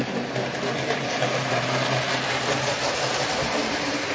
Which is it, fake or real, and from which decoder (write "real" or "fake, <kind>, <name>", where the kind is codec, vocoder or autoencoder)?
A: fake, vocoder, BigVGAN v2